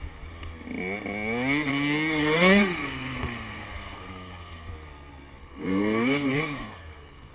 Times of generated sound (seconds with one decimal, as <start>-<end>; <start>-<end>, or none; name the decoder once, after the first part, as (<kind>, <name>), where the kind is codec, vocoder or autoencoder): 1.7-4.7 (codec, SNAC); 5.4-7.3